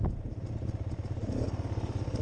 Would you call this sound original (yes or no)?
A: yes